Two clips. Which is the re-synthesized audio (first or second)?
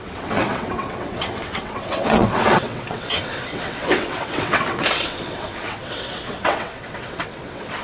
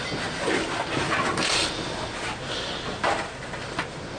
first